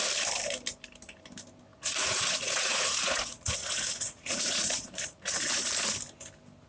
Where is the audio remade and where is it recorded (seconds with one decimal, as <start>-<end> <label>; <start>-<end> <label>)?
0.0-1.7 recorded; 1.7-5.7 remade; 5.7-6.7 recorded

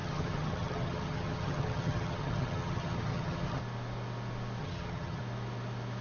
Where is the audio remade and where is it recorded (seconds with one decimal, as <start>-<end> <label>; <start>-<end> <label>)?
0.0-3.6 remade; 3.6-4.6 recorded; 4.6-5.2 remade; 5.2-6.0 recorded